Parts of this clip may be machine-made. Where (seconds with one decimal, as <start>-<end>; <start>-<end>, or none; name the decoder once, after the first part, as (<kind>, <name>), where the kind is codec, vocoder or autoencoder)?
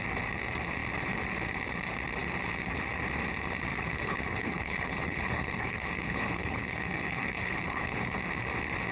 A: 3.7-8.2 (codec, HILCodec)